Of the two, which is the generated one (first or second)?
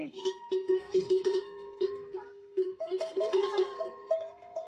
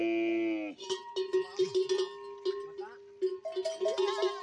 first